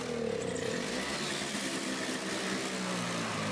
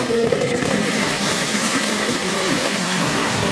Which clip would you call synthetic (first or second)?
second